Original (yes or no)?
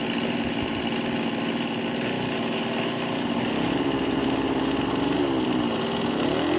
yes